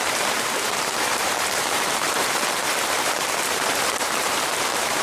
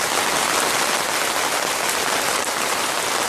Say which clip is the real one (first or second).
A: second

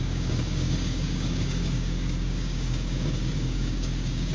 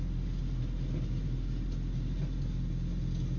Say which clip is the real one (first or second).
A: second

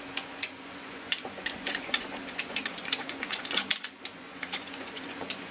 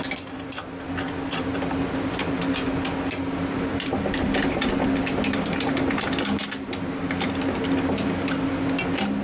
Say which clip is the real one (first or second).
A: second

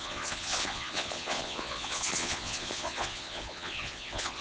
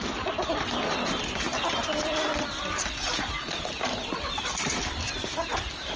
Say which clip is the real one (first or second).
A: second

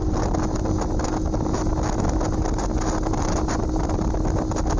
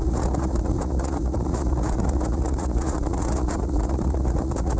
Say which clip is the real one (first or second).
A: first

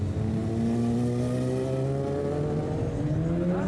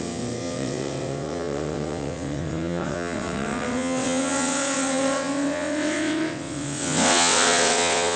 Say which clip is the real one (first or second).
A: first